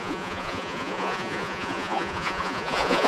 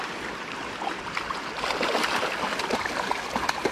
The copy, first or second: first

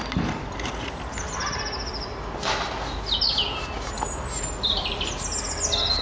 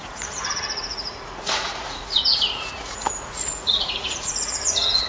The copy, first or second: second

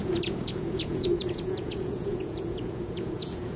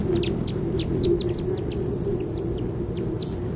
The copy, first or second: first